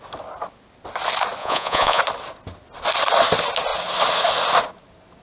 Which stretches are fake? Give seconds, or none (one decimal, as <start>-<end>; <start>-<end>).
1.4-2.0